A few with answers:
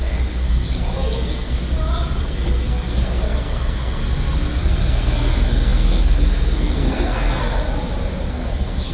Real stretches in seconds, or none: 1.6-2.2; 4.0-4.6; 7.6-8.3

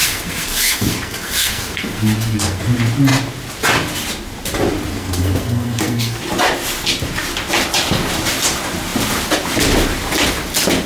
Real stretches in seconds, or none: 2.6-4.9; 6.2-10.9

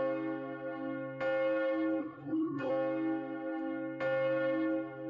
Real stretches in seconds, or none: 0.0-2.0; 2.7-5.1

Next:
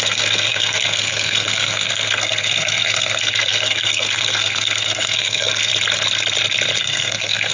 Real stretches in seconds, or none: 5.7-6.8